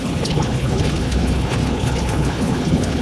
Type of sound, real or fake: fake